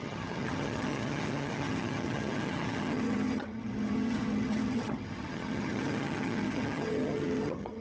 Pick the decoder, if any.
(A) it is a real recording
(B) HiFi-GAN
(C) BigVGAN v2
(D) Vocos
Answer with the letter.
B